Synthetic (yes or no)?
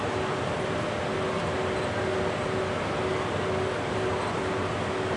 no